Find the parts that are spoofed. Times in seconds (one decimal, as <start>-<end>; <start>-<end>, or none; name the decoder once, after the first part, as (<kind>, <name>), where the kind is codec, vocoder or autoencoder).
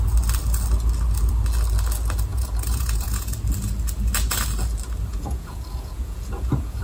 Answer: 2.3-3.3 (vocoder, Vocos); 5.1-6.8